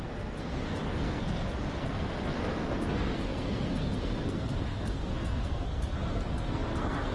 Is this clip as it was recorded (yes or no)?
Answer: no